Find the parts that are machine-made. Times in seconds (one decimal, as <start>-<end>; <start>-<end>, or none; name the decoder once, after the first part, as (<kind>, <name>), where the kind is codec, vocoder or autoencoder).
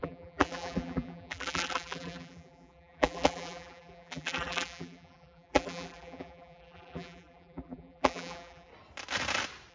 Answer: 0.0-8.7 (vocoder, BigVGAN v2)